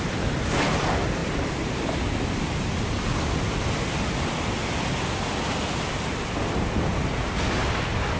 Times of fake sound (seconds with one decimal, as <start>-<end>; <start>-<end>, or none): none